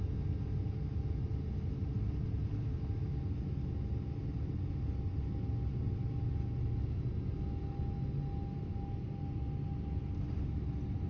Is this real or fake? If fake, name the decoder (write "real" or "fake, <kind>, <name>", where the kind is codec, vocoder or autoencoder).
real